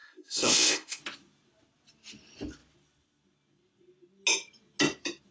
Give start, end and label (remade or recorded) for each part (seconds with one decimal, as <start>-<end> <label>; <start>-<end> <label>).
0.0-1.0 remade; 1.0-5.3 recorded

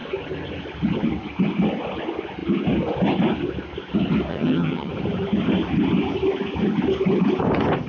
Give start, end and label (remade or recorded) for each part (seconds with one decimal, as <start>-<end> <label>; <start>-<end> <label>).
0.0-4.3 recorded; 4.3-4.9 remade; 4.9-7.9 recorded